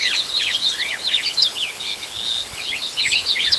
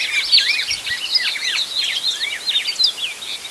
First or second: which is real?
second